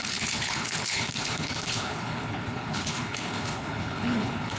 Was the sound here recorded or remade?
remade